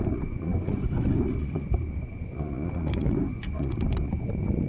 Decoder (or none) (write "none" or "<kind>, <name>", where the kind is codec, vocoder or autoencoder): vocoder, Vocos